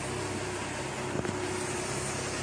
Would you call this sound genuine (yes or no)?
yes